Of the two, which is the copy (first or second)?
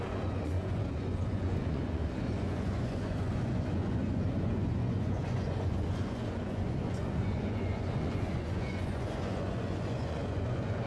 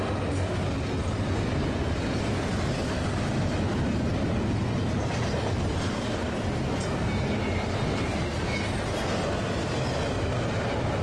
first